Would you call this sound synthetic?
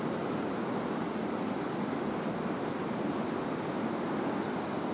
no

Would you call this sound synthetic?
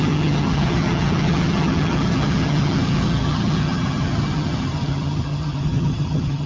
yes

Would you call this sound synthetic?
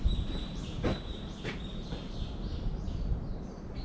yes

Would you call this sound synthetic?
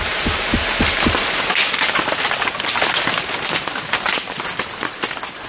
no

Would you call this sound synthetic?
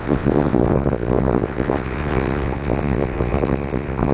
yes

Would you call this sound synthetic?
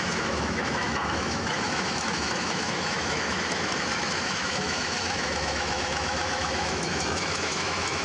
yes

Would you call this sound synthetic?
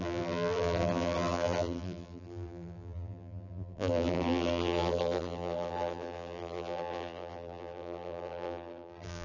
yes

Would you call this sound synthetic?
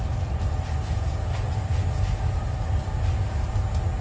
no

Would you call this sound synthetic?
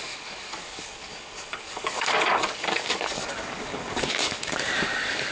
yes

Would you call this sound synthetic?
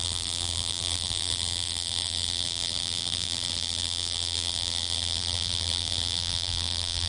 yes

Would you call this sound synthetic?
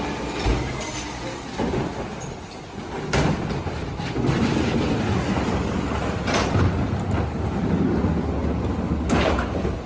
no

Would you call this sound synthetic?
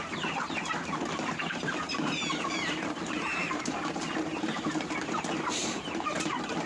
yes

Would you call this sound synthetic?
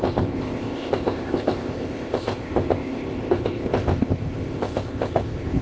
yes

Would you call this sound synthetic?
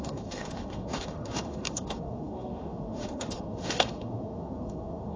yes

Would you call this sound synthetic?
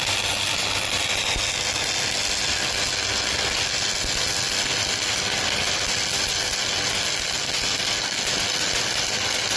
no